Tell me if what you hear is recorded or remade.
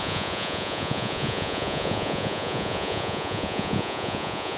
remade